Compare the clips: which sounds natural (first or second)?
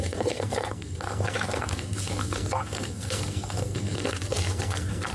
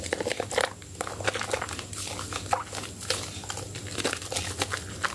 second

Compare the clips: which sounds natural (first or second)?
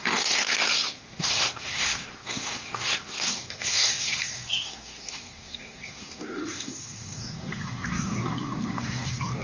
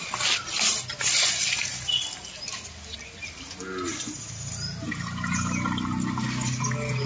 second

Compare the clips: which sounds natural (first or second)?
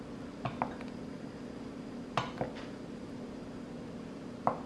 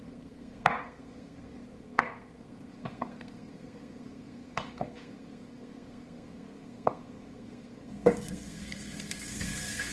first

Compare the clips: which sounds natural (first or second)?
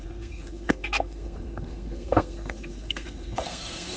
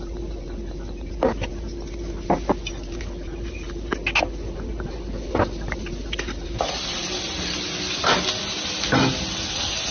second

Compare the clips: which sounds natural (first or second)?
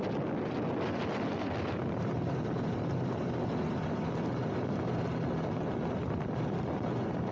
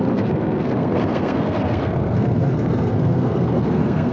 first